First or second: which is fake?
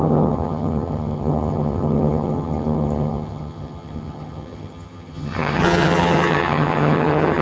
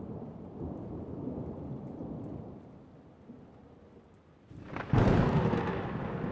first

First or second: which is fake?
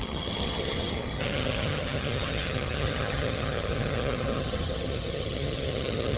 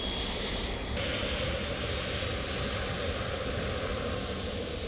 first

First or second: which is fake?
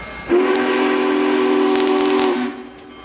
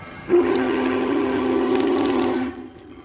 second